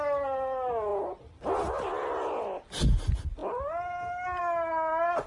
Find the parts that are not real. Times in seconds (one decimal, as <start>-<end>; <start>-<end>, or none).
none